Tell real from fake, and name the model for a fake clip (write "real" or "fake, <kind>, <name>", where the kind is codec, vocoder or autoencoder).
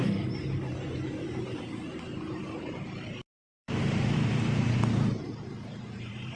fake, vocoder, BigVGAN v2